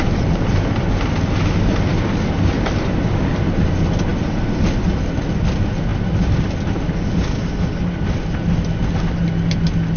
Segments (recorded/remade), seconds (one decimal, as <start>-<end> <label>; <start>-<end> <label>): 0.0-10.0 recorded

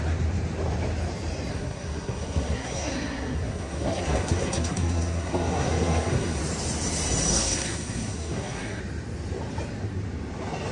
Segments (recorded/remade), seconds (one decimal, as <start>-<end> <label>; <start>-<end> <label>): 0.0-1.5 recorded; 1.5-6.4 remade; 6.4-7.3 recorded; 7.3-8.8 remade; 8.8-10.7 recorded

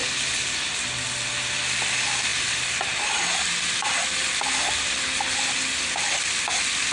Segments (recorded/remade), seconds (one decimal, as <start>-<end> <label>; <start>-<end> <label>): 0.0-6.9 recorded

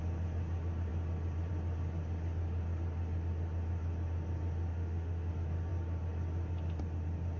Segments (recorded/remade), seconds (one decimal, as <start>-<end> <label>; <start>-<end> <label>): 0.0-4.7 recorded; 4.7-5.3 remade; 5.3-7.4 recorded

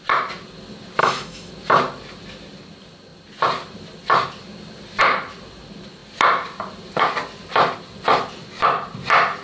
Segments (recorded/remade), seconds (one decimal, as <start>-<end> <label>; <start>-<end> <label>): 0.0-1.0 recorded; 1.0-1.5 remade; 1.5-9.4 recorded

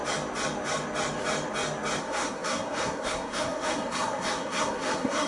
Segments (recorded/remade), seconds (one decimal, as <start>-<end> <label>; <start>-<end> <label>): 0.0-2.0 recorded; 2.0-5.3 remade

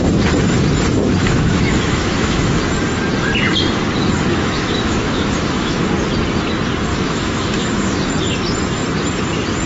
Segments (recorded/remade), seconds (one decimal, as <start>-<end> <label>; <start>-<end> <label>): 0.0-1.2 recorded; 1.2-2.6 remade; 2.6-4.3 recorded; 4.3-5.9 remade; 5.9-6.9 recorded; 6.9-8.1 remade; 8.1-9.7 recorded

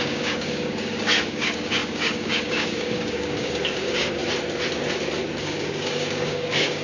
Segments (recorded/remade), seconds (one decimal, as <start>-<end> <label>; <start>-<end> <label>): 0.0-4.2 remade; 4.2-5.4 recorded; 5.4-6.8 remade